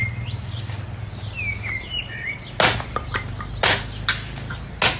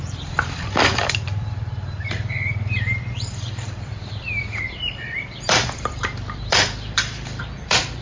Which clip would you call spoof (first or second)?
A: second